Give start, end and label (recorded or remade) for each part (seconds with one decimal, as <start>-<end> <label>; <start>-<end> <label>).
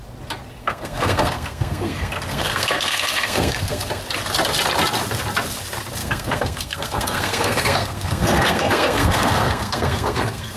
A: 0.0-0.6 recorded; 0.6-4.0 remade; 4.0-6.0 recorded; 6.0-10.6 remade